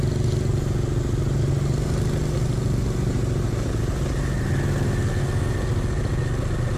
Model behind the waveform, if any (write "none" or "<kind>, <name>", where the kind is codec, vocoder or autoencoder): none